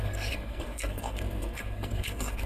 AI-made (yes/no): yes